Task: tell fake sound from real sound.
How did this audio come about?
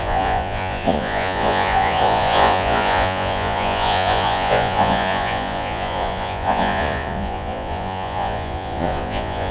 fake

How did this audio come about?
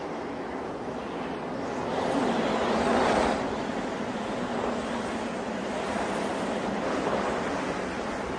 real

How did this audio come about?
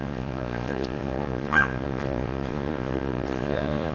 fake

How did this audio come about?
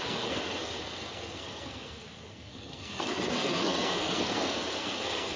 fake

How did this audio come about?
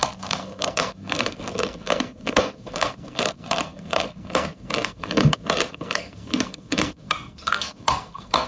fake